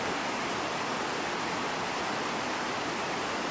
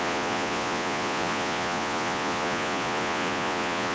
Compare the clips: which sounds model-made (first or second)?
second